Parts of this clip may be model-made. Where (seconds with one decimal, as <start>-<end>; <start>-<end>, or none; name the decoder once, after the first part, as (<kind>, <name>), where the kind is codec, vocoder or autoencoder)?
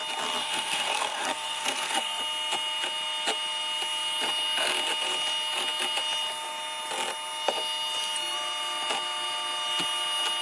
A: 0.4-2.2 (codec, SNAC)